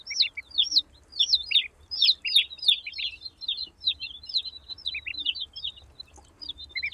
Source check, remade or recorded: recorded